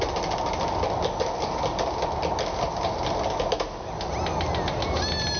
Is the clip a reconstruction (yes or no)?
no